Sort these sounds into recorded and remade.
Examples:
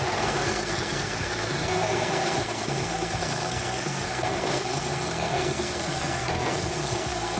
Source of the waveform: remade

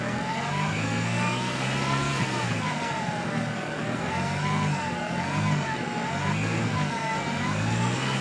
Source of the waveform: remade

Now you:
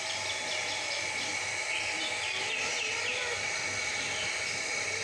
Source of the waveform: recorded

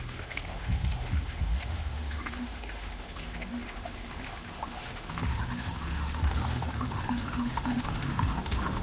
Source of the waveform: remade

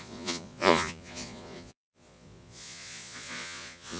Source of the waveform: remade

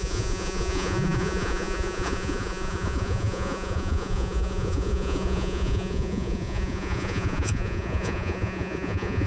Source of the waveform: remade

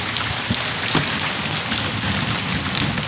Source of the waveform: recorded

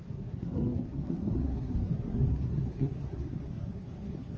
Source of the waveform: remade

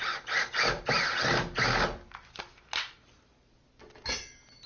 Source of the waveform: recorded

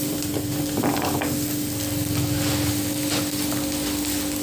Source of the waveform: recorded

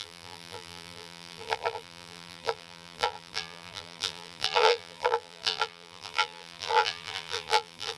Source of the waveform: remade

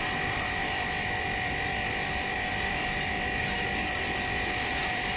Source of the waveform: remade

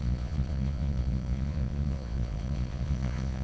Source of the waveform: remade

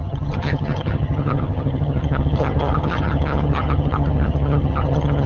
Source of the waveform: remade